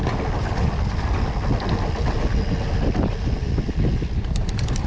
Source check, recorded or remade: recorded